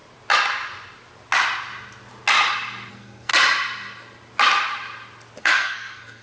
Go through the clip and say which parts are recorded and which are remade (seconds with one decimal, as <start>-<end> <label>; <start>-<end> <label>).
0.0-2.9 recorded; 2.9-3.3 remade; 3.3-5.4 recorded; 5.4-6.2 remade